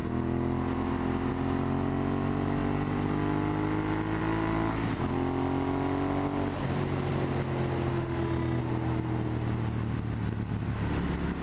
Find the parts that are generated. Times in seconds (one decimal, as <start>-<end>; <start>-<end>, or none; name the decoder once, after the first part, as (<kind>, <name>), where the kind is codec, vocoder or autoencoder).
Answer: 7.9-8.6 (autoencoder, DAC-VAE)